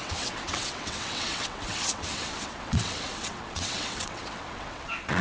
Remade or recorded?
remade